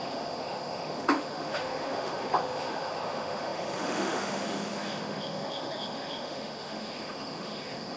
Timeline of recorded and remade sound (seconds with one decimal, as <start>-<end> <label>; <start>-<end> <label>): 0.0-8.0 remade